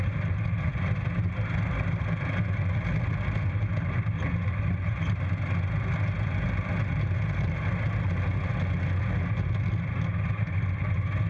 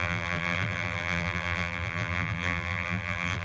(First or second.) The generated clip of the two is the second